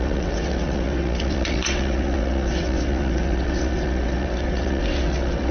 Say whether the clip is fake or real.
fake